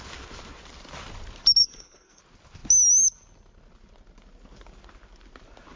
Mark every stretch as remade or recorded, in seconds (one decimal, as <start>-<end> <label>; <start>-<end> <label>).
0.0-1.6 recorded; 1.6-2.2 remade; 2.2-5.8 recorded